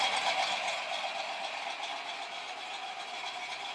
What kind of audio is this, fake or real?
real